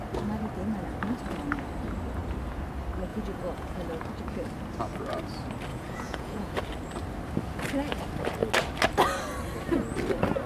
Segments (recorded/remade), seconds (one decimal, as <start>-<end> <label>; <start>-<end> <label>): 0.0-3.1 recorded; 3.1-4.0 remade; 4.0-5.7 recorded; 5.7-6.6 remade; 6.6-10.5 recorded